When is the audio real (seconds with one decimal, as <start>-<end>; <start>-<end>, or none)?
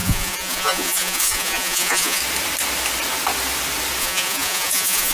2.2-4.0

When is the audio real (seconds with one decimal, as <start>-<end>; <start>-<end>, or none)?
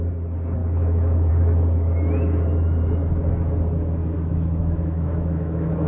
0.0-0.6; 1.3-4.0